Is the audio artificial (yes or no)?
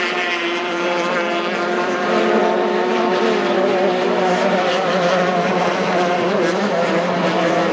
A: yes